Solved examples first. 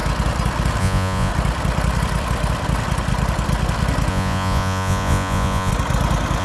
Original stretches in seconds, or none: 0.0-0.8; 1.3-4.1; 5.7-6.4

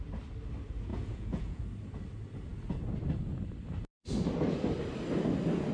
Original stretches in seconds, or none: 0.0-0.9; 1.6-5.7

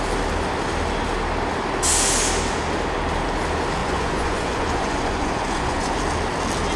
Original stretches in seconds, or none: 0.0-3.8; 6.0-6.8